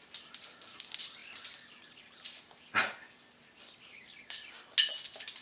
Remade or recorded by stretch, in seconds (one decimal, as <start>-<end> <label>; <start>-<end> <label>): 0.0-5.4 recorded